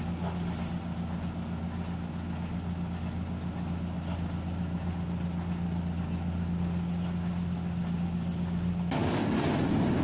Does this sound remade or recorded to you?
recorded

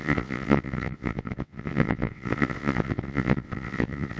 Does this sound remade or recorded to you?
remade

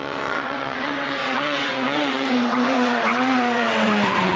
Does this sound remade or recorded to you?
remade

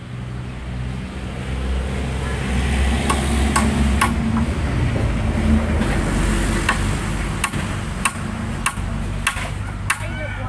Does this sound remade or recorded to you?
recorded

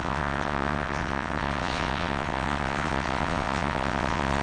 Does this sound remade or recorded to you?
remade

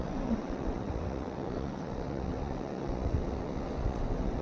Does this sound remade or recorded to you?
remade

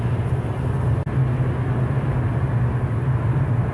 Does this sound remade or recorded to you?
recorded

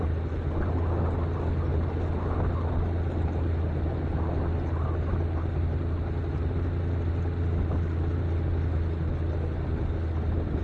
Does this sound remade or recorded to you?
recorded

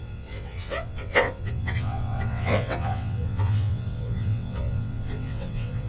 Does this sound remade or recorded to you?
remade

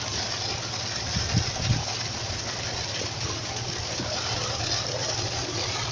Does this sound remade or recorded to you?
recorded